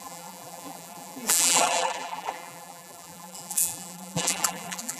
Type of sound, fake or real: fake